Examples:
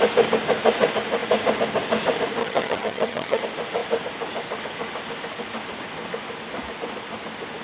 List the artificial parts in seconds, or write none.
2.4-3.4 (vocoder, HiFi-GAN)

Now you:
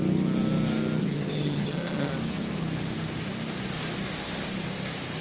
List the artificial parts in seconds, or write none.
1.0-2.1 (vocoder, HiFi-GAN)

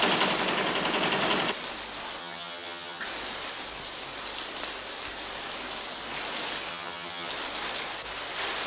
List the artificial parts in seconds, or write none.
2.2-3.0 (vocoder, HiFi-GAN); 6.7-7.3